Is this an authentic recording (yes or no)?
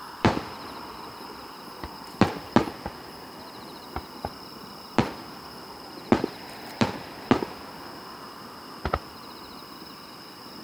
no